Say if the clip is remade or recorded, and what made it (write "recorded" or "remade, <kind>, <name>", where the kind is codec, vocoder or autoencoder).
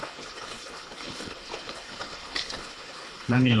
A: remade, codec, HILCodec